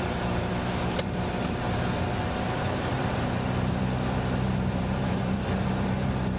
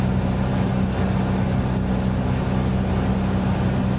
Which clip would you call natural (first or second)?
second